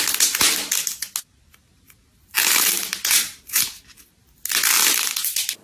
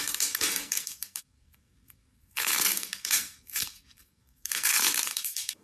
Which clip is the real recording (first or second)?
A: first